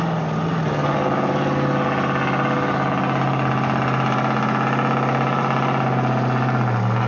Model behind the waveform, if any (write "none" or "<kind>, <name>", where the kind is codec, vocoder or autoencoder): none